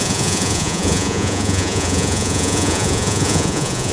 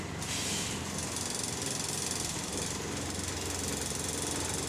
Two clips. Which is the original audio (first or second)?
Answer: second